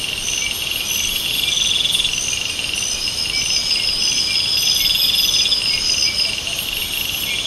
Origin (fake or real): real